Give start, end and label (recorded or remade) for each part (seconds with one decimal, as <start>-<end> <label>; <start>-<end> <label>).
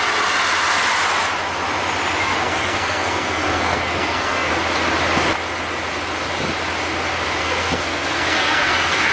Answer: 0.0-2.3 recorded; 2.3-4.5 remade; 4.5-7.4 recorded; 7.4-9.1 remade